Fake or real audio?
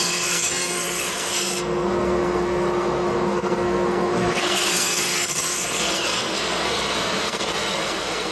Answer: fake